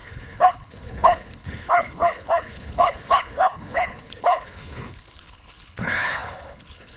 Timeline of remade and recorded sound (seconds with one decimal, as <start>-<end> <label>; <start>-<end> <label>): 0.0-7.0 remade

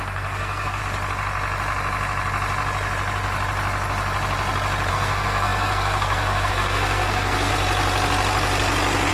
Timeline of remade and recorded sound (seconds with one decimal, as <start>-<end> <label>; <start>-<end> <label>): 0.0-0.8 remade; 0.8-4.9 recorded; 4.9-7.5 remade; 7.5-9.1 recorded

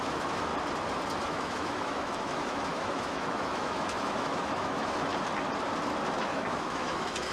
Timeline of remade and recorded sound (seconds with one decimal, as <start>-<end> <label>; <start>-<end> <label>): 0.0-0.5 remade; 0.5-1.2 recorded; 1.2-5.1 remade; 5.1-6.2 recorded; 6.2-7.3 remade

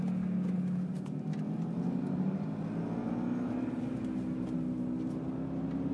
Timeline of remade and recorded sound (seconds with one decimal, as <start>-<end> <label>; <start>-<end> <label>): 0.0-5.9 recorded

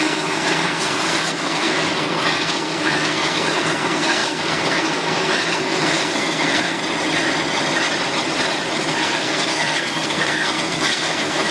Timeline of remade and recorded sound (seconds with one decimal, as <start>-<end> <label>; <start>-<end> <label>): 0.0-6.8 remade; 6.8-8.9 recorded; 8.9-11.5 remade